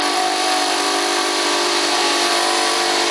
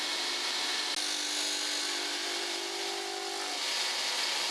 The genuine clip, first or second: second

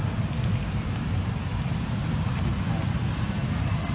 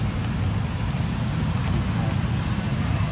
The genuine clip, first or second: second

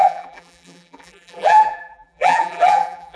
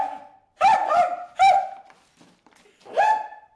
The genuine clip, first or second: second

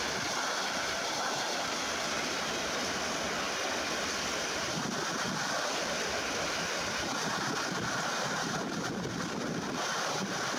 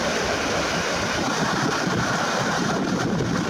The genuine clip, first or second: first